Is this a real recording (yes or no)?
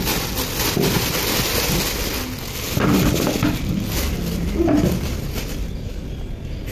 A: yes